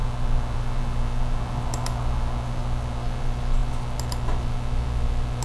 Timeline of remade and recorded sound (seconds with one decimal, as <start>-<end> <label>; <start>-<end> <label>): 0.0-5.4 recorded